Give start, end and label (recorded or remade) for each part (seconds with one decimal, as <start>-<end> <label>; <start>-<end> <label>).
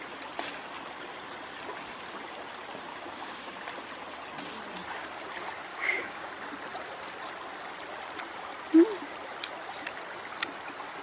0.0-2.9 recorded; 2.9-3.5 remade; 3.5-5.7 recorded; 5.7-6.3 remade; 6.3-11.0 recorded